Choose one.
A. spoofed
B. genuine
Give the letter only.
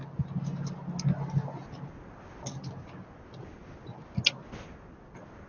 B